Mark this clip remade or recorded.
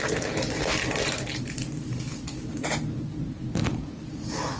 recorded